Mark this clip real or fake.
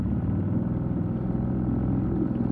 real